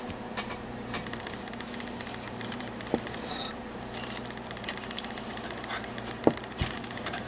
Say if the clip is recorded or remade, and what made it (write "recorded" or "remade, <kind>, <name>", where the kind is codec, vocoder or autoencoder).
remade, vocoder, BigVGAN v2